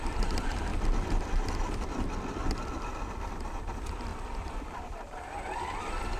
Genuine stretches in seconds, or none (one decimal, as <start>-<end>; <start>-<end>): 0.7-3.3